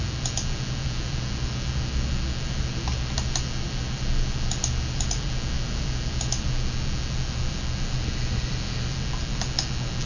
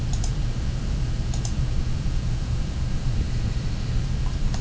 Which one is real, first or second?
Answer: first